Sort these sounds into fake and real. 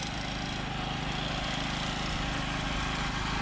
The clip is real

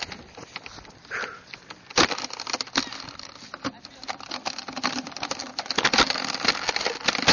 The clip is real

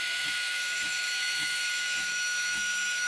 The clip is fake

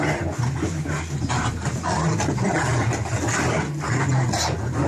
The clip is real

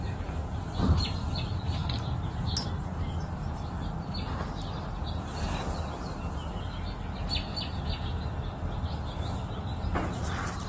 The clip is real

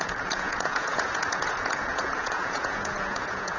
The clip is fake